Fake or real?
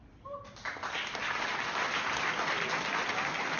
real